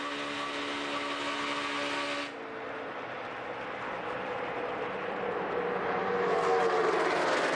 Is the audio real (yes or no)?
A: yes